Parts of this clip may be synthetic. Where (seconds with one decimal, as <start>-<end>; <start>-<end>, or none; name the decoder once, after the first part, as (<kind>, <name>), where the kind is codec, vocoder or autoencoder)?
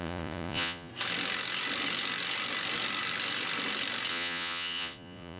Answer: 0.0-0.9 (vocoder, Vocos); 4.1-5.4